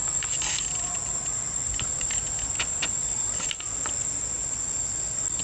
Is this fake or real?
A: real